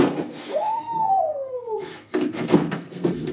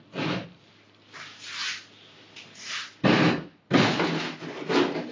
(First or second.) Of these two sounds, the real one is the second